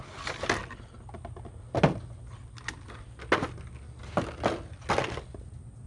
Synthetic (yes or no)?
no